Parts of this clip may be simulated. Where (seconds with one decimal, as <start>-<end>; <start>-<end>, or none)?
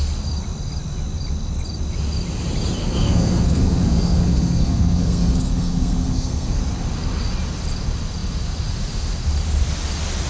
2.8-6.6